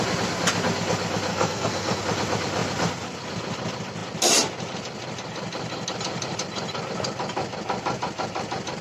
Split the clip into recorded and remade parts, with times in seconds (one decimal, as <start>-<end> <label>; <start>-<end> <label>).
0.0-1.3 recorded; 1.3-2.0 remade; 2.0-8.8 recorded